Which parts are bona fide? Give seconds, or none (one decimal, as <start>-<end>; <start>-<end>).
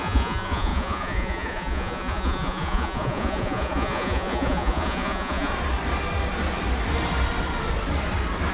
5.5-8.5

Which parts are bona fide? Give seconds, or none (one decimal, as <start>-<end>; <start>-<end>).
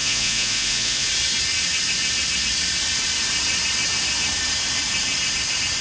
1.1-5.8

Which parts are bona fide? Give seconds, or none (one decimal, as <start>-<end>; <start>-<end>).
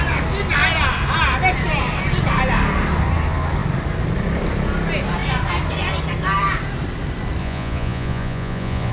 0.0-7.4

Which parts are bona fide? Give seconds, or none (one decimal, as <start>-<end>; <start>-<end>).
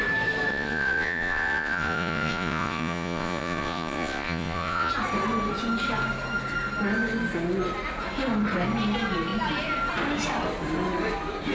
0.0-0.5; 4.9-11.5